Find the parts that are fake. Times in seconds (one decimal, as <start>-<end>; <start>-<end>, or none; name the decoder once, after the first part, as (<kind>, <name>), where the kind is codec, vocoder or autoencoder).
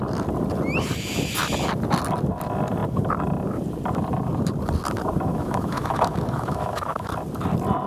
5.3-7.1 (autoencoder, DAC-VAE)